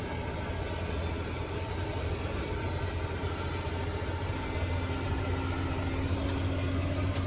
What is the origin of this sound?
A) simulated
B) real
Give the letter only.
B